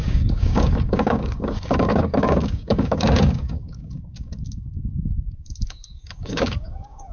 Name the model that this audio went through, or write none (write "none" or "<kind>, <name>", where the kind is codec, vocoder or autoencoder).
codec, DAC